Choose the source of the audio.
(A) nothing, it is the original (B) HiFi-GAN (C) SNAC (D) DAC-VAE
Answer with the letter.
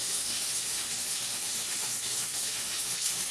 D